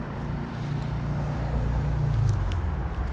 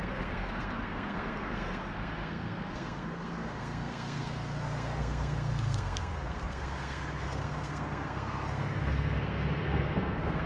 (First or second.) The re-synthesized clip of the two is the second